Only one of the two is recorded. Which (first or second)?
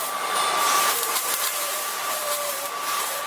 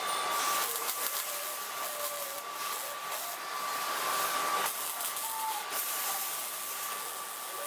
second